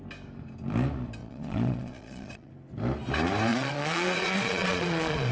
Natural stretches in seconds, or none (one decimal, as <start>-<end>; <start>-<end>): 0.0-1.2; 2.5-3.5